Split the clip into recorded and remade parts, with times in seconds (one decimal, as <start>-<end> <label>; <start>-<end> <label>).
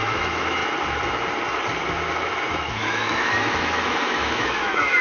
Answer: 0.0-0.6 remade; 0.6-2.5 recorded; 2.5-5.0 remade